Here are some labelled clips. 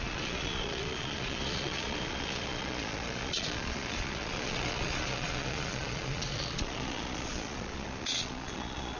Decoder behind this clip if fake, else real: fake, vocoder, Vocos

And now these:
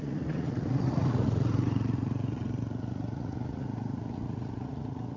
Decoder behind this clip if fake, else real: fake, vocoder, Vocos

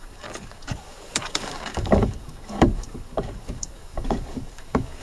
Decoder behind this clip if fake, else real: fake, codec, DAC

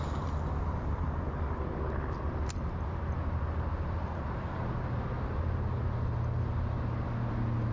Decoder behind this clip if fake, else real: real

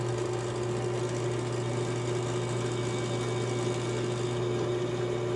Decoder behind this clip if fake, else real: real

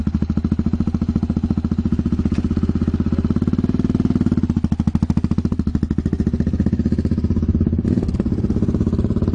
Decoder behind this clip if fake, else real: real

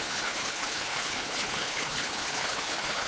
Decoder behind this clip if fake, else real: fake, codec, HILCodec